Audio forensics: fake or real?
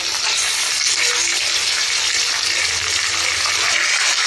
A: real